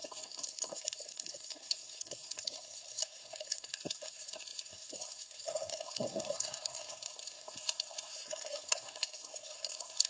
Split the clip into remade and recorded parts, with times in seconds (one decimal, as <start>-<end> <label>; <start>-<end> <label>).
0.0-10.1 remade